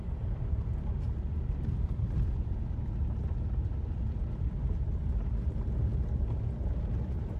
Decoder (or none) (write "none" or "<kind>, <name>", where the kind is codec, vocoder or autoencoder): none